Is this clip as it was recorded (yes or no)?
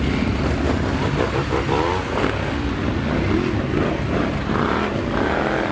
yes